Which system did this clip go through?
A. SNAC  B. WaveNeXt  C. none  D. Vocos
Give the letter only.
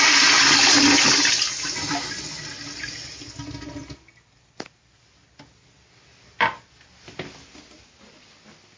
C